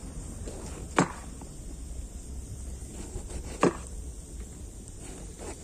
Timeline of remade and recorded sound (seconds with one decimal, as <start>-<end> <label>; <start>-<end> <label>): 0.0-5.6 recorded